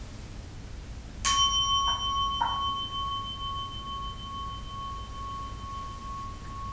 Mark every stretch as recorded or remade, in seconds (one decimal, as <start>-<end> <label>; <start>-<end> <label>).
0.0-6.7 recorded